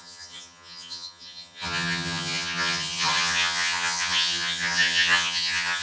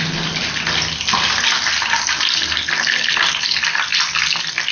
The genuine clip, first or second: second